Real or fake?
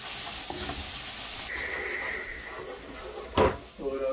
real